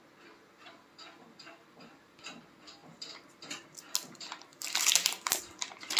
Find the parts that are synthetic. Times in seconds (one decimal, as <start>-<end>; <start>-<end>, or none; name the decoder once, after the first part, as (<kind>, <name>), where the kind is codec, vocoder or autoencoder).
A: 2.8-3.6 (vocoder, BigVGAN v2); 4.5-5.4